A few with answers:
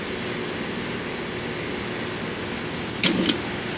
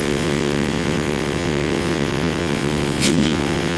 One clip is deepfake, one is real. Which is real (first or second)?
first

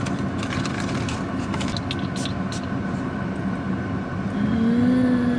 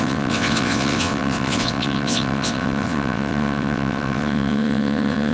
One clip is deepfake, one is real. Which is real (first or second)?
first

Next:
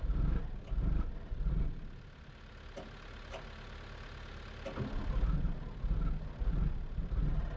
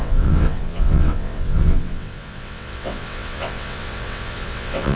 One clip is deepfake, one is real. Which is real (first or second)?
first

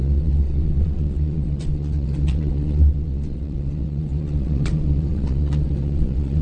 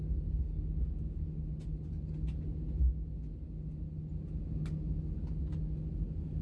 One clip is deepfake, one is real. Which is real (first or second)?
second